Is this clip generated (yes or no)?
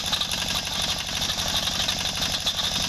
no